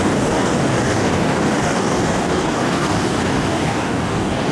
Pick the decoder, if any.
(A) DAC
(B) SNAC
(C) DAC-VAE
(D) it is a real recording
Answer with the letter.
A